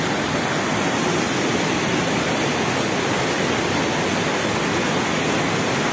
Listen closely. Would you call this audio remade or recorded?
recorded